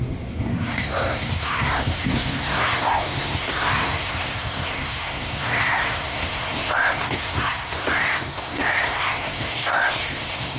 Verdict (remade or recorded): remade